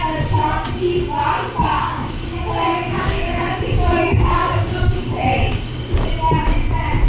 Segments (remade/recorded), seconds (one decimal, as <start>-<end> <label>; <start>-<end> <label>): 0.0-1.8 recorded; 1.8-6.1 remade; 6.1-7.1 recorded